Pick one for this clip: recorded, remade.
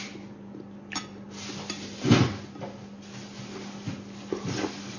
recorded